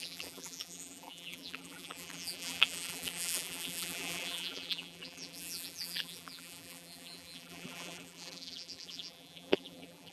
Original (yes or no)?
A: no